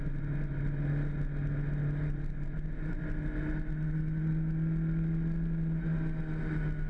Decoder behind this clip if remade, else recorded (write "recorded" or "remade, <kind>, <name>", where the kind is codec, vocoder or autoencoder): recorded